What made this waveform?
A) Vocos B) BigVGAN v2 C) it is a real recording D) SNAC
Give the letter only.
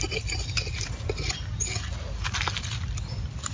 C